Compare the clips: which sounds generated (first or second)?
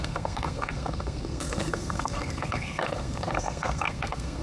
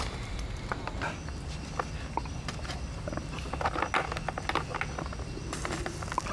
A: first